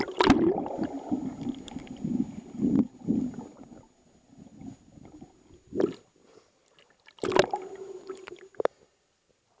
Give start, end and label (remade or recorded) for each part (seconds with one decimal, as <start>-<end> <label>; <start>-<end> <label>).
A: 0.0-9.6 recorded